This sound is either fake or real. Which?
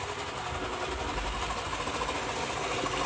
real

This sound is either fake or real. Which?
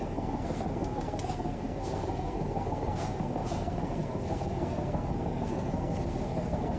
fake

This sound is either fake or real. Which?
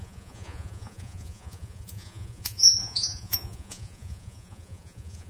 fake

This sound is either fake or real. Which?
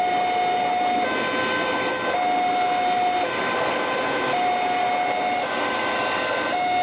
real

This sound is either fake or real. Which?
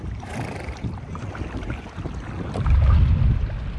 real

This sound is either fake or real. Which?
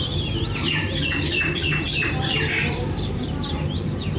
fake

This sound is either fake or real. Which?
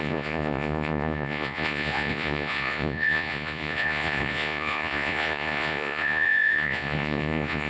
fake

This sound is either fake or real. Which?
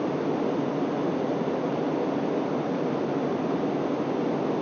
real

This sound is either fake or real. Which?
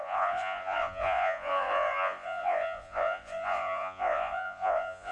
fake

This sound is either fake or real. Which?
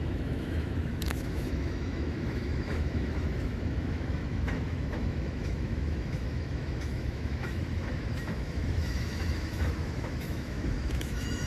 fake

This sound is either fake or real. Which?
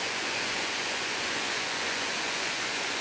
fake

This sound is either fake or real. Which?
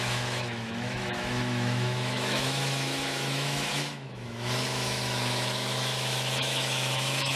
fake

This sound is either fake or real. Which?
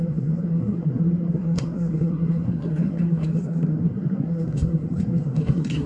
fake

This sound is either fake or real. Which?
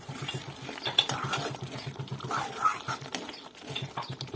real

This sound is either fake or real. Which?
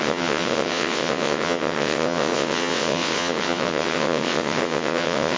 fake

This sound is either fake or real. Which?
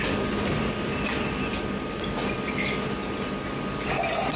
real